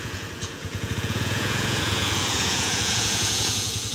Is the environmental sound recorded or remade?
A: remade